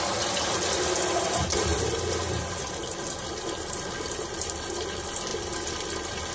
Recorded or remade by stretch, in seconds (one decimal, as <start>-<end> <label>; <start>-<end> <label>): 0.0-6.3 recorded